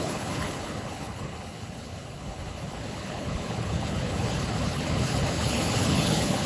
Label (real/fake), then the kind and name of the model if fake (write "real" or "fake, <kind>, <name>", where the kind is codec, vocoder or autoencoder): fake, codec, HILCodec